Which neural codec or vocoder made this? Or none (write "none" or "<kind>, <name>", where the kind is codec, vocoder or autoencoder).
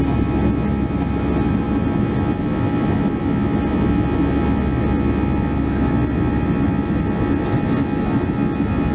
none